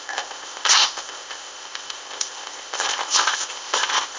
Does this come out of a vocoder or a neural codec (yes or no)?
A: yes